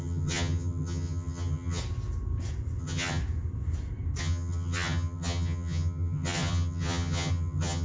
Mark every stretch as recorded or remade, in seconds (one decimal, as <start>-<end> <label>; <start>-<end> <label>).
0.0-1.8 remade; 1.8-2.8 recorded; 2.8-3.2 remade; 3.2-4.2 recorded; 4.2-7.8 remade